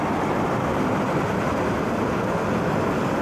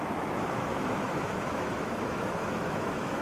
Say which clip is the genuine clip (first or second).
first